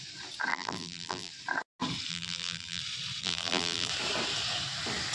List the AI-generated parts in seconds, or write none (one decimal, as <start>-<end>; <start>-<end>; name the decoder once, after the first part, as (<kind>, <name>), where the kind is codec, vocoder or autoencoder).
0.5-1.3 (vocoder, BigVGAN v2); 2.1-2.8; 3.2-3.9